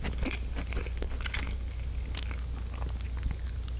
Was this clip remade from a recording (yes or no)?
no